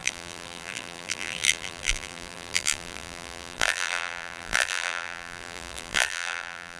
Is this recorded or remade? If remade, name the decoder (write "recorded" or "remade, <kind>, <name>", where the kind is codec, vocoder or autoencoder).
remade, vocoder, BigVGAN v2